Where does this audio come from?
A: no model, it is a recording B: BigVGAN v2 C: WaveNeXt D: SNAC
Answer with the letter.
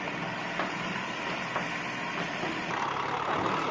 A